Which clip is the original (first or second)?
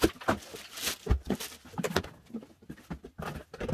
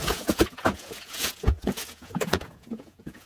first